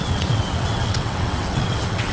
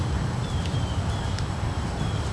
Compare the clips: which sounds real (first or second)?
second